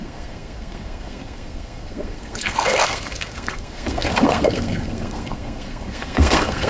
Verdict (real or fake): fake